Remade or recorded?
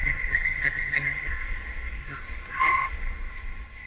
remade